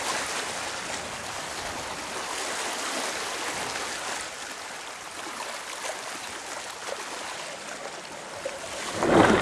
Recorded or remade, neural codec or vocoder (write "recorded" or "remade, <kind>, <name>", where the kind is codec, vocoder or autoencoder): recorded